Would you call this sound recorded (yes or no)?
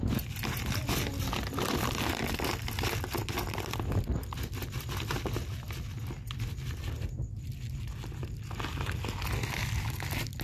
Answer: yes